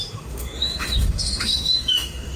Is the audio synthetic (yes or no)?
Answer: yes